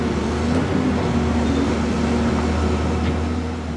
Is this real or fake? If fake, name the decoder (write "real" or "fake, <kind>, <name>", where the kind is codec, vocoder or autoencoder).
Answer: real